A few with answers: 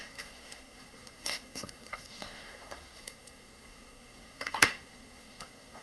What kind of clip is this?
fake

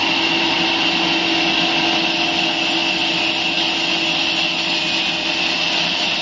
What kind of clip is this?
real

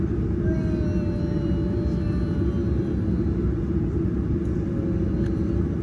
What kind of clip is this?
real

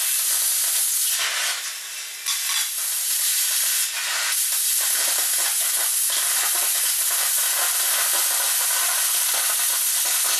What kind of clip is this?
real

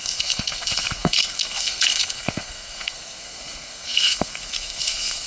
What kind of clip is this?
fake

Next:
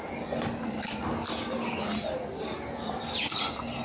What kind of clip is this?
real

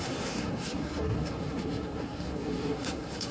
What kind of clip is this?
fake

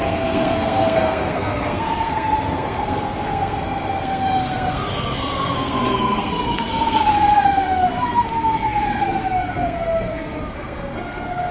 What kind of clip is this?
fake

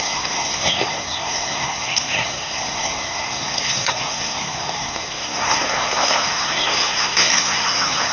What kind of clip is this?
fake